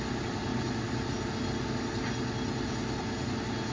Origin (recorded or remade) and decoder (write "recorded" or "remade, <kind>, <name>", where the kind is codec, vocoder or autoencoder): recorded